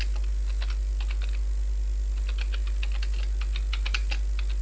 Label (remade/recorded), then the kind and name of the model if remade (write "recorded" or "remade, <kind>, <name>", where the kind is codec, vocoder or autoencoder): recorded